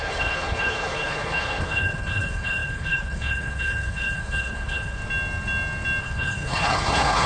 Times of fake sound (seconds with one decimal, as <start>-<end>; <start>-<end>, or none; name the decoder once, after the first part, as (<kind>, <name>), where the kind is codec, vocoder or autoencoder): 0.0-5.0 (codec, HILCodec); 6.0-7.3